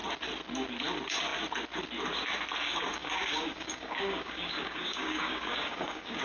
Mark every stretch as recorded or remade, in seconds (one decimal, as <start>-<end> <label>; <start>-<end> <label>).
0.0-2.6 recorded; 2.6-6.2 remade